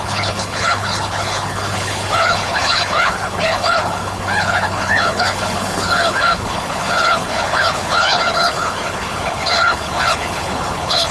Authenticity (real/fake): fake